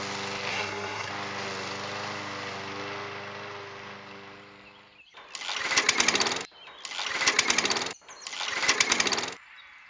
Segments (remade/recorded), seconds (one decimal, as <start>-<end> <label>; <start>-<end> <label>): 0.0-0.5 recorded; 0.5-1.1 remade; 1.1-9.9 recorded